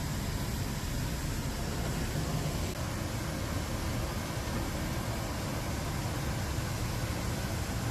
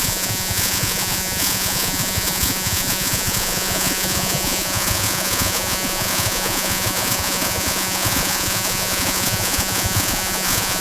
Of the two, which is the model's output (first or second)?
second